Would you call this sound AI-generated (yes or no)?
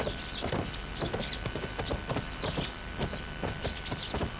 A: no